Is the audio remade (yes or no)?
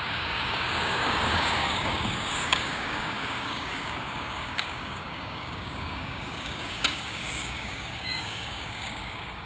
yes